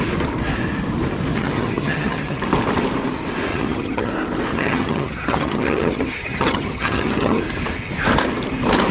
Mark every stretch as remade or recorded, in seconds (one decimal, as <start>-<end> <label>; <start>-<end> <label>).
0.0-1.3 recorded; 1.3-2.4 remade; 2.4-3.5 recorded; 3.5-4.1 remade; 4.1-4.5 recorded; 4.5-7.4 remade; 7.4-8.9 recorded

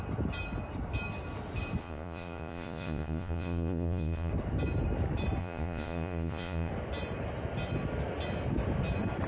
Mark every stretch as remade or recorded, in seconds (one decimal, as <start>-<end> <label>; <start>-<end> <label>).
0.0-1.8 recorded; 1.8-4.3 remade; 4.3-5.4 recorded; 5.4-6.7 remade; 6.7-9.3 recorded